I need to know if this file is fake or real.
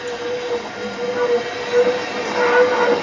real